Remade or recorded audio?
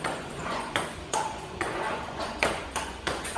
remade